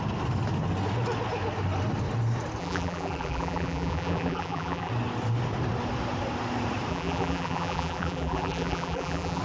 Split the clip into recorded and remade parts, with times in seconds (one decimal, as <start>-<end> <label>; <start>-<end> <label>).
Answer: 0.0-2.6 recorded; 2.6-4.9 remade; 4.9-6.9 recorded; 6.9-9.4 remade